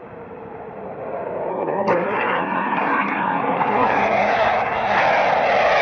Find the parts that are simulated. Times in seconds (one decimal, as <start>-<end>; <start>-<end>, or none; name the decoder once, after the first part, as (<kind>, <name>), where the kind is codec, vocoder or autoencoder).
1.5-5.0 (codec, SNAC)